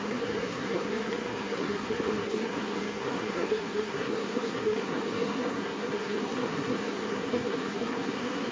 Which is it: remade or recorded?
remade